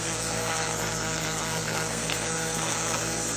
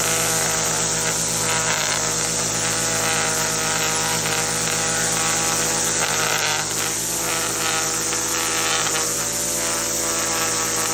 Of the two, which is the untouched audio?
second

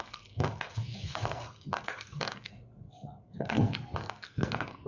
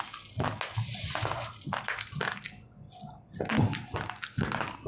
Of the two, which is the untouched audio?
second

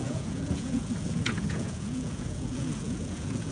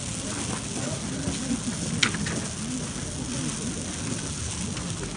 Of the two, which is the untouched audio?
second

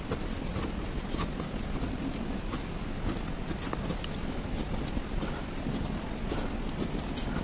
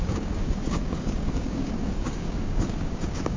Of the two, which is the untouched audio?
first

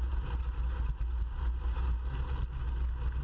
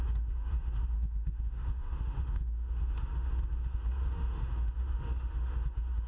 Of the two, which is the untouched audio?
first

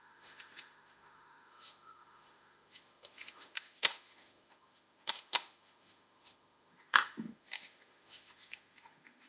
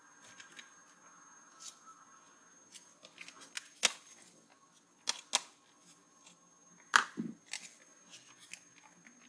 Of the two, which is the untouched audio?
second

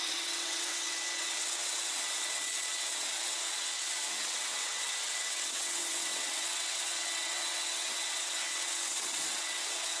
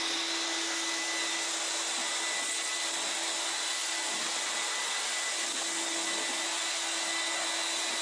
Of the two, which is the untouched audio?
second